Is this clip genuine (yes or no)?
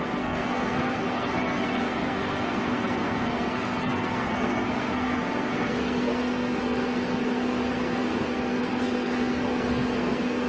no